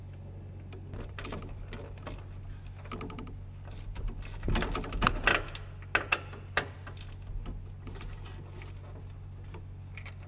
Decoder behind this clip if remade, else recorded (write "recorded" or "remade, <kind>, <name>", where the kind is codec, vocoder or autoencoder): recorded